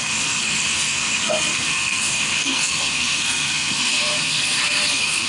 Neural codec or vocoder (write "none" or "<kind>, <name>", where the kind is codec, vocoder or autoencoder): codec, SNAC